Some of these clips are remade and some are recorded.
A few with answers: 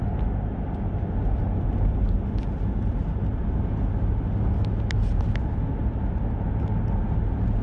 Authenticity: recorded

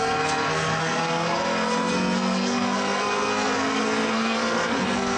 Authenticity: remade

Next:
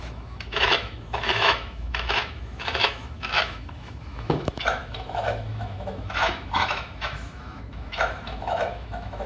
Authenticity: remade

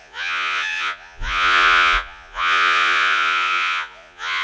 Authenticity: remade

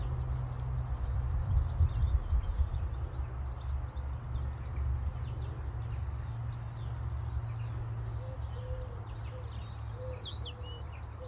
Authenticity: recorded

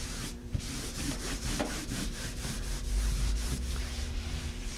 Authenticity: remade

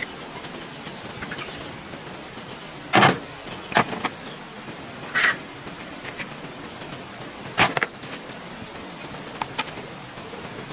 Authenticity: recorded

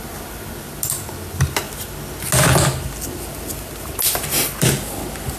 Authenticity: recorded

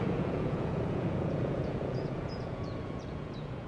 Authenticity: remade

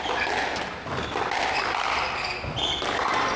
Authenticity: recorded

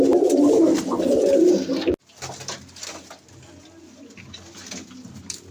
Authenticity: recorded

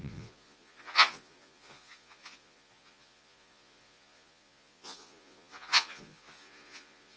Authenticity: remade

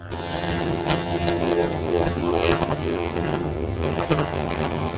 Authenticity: remade